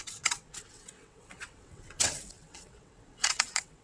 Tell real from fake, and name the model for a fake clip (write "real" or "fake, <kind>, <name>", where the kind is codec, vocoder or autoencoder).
fake, vocoder, WaveNeXt